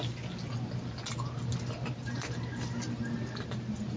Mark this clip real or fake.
real